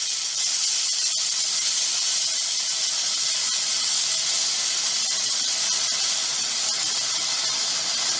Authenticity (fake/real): real